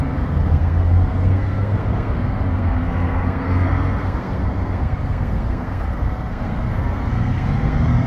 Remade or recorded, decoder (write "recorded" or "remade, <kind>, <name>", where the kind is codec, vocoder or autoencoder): remade, codec, SNAC